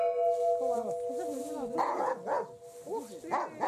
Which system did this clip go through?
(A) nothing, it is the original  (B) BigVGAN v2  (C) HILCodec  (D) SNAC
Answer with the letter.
A